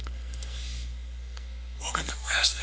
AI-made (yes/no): yes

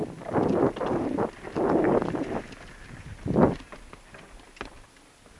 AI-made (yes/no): no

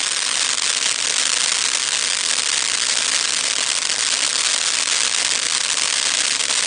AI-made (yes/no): no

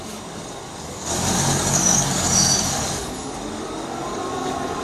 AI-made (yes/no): yes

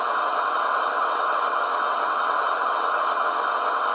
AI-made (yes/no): yes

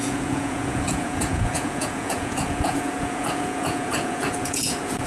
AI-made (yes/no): yes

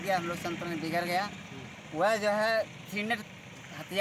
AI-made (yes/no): no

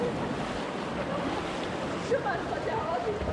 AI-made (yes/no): no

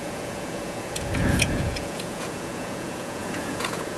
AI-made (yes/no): yes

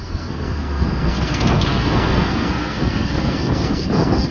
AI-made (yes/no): yes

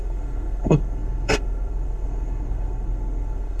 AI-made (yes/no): yes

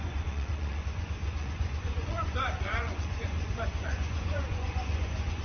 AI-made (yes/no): yes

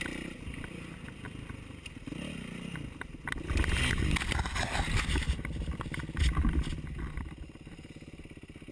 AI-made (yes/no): no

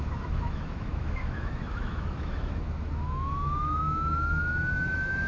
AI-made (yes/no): yes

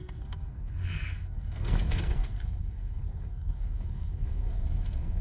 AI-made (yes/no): yes